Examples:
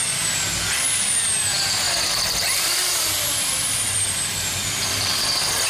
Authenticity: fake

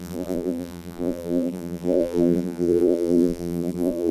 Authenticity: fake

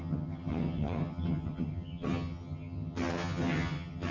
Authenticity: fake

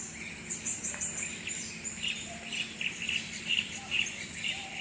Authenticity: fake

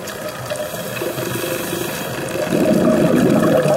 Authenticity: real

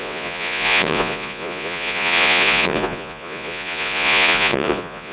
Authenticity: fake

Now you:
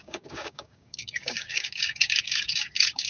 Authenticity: fake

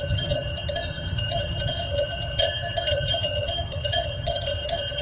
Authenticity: fake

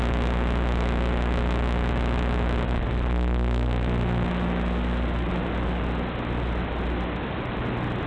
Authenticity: real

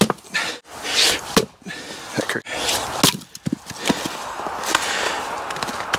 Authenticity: real